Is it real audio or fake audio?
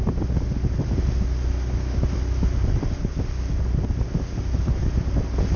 real